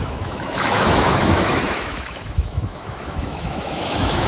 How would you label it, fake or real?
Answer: fake